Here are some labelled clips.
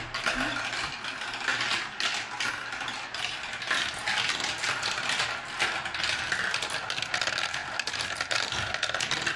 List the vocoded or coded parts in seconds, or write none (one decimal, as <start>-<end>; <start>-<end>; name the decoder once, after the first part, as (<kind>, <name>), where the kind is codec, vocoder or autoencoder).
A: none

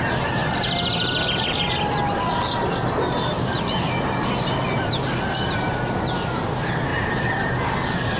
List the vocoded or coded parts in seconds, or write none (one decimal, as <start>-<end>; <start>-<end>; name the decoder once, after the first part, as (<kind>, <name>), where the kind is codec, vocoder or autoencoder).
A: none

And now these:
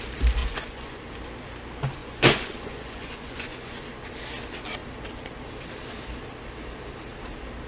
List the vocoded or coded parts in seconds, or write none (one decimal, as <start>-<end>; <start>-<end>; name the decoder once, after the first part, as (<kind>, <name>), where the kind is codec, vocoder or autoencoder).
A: 0.4-1.0 (vocoder, Vocos); 2.0-3.8